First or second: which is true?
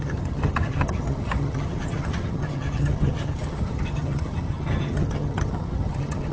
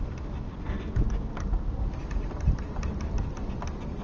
second